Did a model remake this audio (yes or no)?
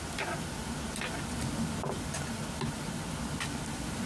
no